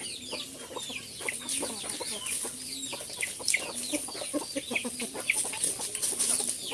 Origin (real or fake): real